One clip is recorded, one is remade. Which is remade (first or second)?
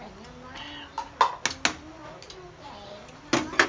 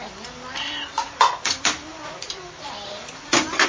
second